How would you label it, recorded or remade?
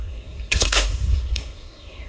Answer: remade